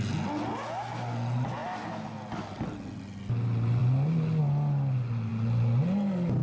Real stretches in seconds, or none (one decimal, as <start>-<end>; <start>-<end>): 0.0-6.4